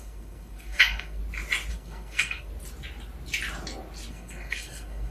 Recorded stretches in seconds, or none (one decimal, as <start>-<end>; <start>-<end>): 1.2-1.7; 2.5-4.1